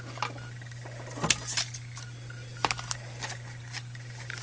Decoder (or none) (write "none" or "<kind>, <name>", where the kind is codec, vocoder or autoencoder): none